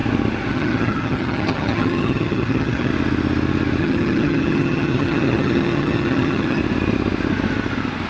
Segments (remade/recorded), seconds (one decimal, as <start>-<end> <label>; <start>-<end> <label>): 0.0-0.5 recorded; 0.5-2.9 remade; 2.9-3.8 recorded; 3.8-6.6 remade; 6.6-8.1 recorded